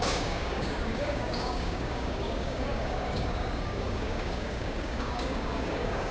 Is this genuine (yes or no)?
no